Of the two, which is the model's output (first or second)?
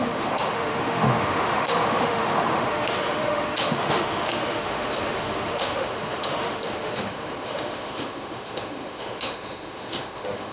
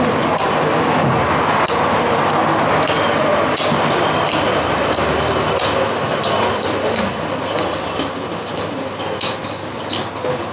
first